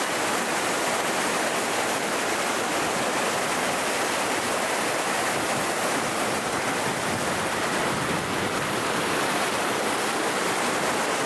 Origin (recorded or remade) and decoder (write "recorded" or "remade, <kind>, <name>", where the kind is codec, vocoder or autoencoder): recorded